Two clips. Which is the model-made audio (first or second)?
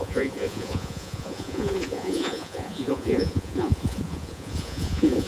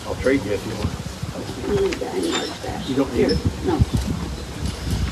first